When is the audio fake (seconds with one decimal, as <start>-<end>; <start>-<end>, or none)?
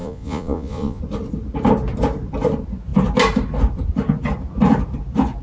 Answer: 0.0-1.0